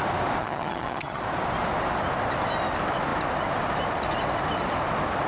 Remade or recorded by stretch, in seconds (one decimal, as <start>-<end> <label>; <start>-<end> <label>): 0.0-0.4 recorded; 0.4-1.2 remade; 1.2-5.3 recorded